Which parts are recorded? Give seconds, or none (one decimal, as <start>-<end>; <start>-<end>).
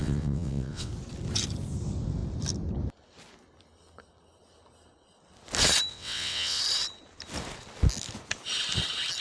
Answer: 0.9-5.9; 6.6-9.2